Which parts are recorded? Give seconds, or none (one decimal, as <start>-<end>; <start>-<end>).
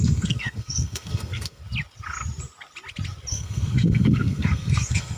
1.6-3.3